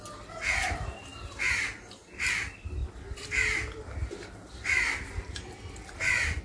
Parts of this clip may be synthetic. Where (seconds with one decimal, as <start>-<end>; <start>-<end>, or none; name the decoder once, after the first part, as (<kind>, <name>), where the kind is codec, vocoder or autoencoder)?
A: 2.8-6.4 (vocoder, BigVGAN v2)